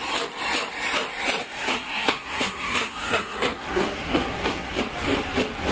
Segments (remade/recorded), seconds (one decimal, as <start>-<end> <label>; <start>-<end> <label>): 0.0-1.4 recorded; 1.4-4.8 remade; 4.8-5.7 recorded